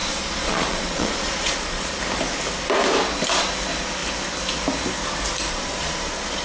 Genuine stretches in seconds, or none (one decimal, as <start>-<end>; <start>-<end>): 2.0-5.5